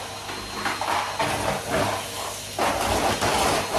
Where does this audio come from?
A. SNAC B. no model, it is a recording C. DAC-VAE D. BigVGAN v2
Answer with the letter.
B